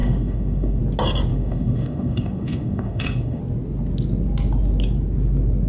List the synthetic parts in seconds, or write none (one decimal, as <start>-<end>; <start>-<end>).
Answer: 0.0-0.8; 1.3-3.4